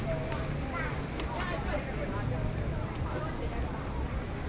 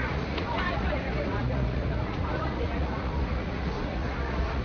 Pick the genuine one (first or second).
first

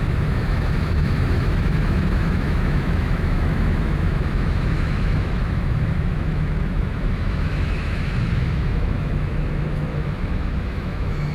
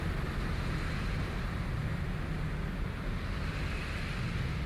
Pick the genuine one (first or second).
second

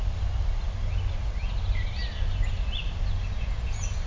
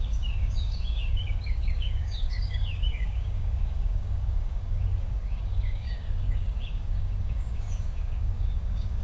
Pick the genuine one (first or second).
first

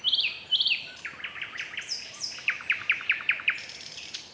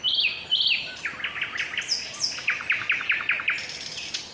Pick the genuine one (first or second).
second